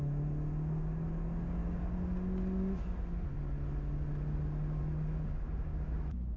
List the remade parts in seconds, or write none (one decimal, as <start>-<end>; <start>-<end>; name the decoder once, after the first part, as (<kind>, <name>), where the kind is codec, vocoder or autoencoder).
5.7-6.4 (autoencoder, DAC-VAE)